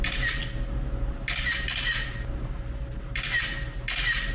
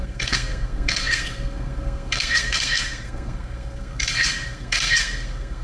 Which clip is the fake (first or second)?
second